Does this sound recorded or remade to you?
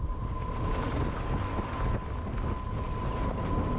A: recorded